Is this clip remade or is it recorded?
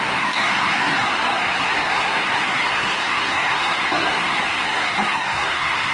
remade